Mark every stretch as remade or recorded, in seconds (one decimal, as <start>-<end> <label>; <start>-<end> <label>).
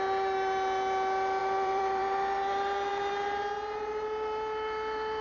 0.0-1.4 recorded; 1.4-2.0 remade; 2.0-5.2 recorded